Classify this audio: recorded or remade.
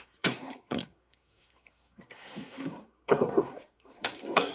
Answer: remade